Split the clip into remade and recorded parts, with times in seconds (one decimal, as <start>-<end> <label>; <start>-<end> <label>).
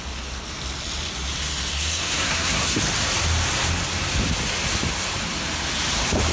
0.0-1.7 recorded; 1.7-2.8 remade; 2.8-6.3 recorded